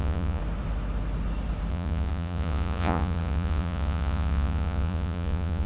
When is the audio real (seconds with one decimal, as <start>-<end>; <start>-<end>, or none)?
0.4-1.7